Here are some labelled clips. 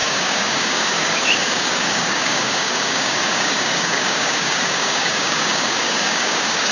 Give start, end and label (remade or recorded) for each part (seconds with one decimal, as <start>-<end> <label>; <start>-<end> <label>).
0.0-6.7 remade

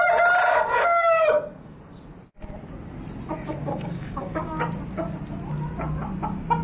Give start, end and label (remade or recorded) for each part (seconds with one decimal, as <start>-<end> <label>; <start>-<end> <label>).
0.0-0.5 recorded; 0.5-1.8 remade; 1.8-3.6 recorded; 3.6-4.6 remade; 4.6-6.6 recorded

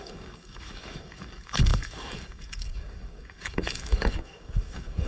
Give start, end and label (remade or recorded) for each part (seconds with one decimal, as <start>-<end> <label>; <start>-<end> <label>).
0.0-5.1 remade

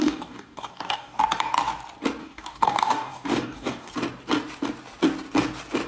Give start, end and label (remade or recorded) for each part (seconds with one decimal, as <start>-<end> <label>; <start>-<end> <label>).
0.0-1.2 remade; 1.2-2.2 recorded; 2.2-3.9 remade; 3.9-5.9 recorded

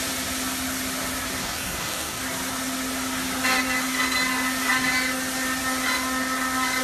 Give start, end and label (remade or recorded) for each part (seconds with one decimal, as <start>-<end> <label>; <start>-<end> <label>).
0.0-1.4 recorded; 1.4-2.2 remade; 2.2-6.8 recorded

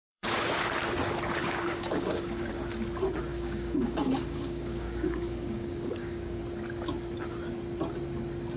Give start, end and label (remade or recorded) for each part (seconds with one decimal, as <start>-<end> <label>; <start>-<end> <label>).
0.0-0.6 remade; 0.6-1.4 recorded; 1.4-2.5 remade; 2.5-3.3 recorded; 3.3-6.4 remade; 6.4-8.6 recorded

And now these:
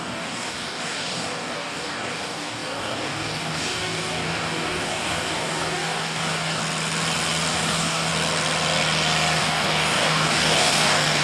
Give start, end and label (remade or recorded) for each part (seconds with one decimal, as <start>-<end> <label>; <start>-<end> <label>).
0.0-6.6 remade; 6.6-7.5 recorded; 7.5-8.1 remade; 8.1-9.4 recorded; 9.4-11.2 remade

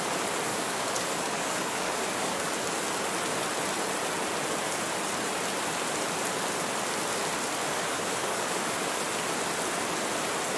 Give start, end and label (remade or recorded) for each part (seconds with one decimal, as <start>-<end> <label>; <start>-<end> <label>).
0.0-0.5 recorded; 0.5-2.5 remade; 2.5-7.6 recorded; 7.6-9.0 remade; 9.0-10.6 recorded